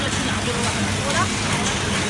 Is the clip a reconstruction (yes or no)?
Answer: no